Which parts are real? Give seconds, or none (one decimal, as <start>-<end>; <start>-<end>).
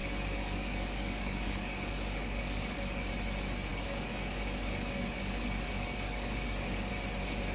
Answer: 3.1-3.7; 6.9-7.5